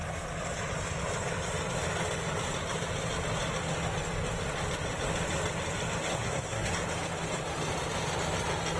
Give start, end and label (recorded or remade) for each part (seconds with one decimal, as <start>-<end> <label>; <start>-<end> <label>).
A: 0.0-6.1 recorded; 6.1-6.7 remade; 6.7-8.8 recorded